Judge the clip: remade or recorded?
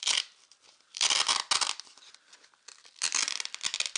recorded